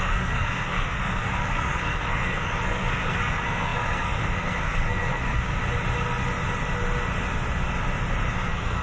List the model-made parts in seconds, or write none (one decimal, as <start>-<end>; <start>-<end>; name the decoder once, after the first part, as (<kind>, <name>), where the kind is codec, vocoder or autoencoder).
0.0-5.6 (codec, SNAC); 8.3-8.8